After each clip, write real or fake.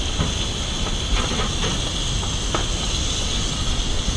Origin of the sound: real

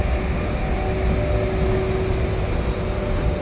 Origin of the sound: real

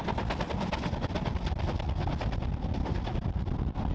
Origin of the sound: real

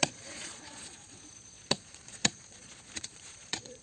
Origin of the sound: fake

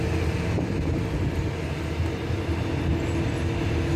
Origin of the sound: real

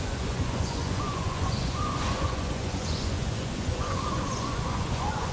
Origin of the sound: fake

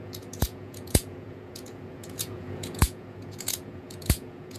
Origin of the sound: fake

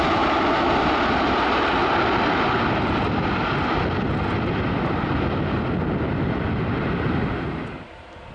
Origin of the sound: real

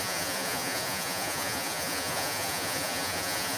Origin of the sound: fake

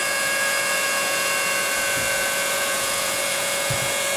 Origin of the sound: fake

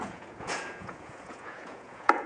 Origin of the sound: fake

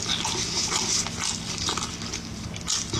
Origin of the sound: real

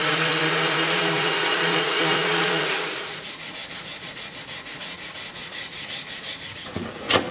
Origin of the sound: fake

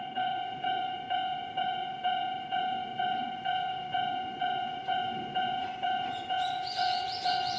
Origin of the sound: fake